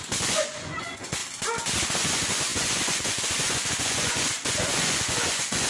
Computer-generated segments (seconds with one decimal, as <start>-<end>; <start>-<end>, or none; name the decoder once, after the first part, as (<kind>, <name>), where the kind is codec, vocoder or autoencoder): 0.0-1.2 (vocoder, Vocos); 2.0-5.7